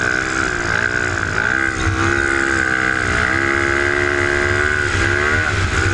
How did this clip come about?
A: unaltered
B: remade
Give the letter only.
A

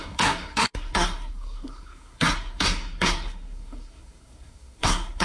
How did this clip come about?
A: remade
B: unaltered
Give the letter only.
A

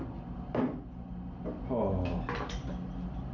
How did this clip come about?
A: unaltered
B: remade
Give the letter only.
A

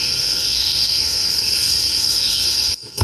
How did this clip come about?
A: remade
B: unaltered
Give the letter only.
A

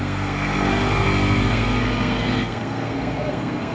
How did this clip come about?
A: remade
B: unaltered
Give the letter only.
A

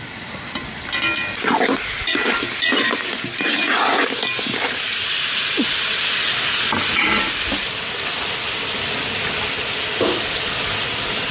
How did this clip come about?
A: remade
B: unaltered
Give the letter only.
B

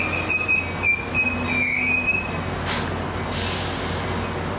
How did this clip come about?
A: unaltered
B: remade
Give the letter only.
A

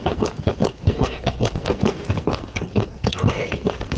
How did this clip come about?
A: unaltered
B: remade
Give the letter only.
B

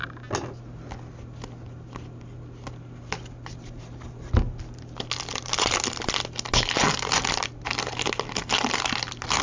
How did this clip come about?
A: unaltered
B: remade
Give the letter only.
A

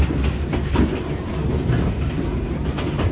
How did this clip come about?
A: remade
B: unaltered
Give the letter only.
B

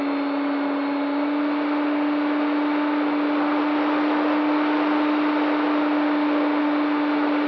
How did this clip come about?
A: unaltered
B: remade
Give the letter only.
A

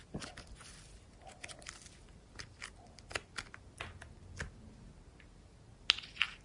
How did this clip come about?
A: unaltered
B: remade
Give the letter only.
A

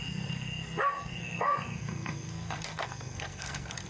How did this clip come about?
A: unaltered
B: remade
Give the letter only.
B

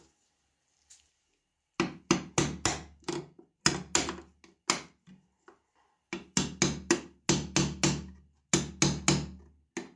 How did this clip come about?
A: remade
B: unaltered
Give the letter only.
B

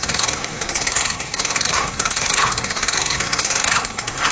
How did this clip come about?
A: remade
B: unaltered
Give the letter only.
A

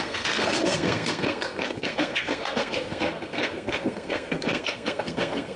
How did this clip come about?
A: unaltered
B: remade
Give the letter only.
B